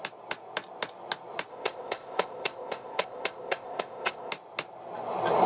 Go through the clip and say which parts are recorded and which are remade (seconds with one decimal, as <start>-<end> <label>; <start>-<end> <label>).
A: 0.0-1.5 recorded; 1.5-4.3 remade; 4.3-5.5 recorded